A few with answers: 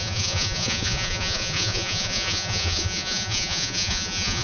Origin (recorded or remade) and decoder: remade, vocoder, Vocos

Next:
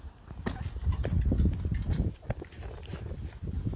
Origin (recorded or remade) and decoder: recorded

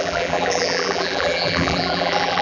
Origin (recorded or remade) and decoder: remade, vocoder, BigVGAN v2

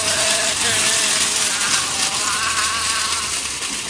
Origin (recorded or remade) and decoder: recorded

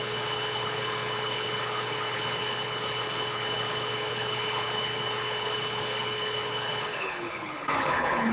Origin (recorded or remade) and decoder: remade, codec, HILCodec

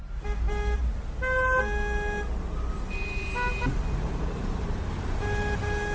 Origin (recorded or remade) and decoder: recorded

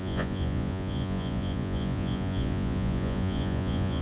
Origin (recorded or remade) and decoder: remade, vocoder, Vocos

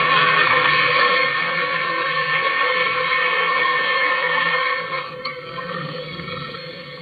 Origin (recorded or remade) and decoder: remade, codec, SNAC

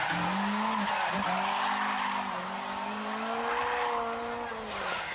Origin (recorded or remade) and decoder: recorded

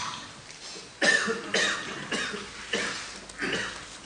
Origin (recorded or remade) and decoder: recorded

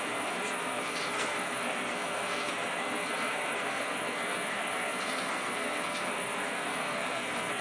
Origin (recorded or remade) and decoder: remade, codec, SNAC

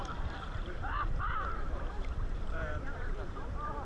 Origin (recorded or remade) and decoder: remade, vocoder, BigVGAN v2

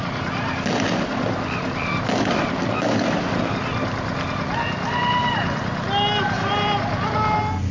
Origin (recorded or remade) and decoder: recorded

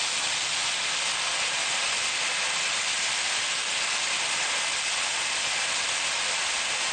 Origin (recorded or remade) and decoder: recorded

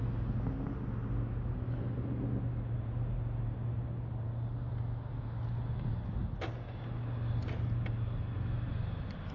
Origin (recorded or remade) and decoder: recorded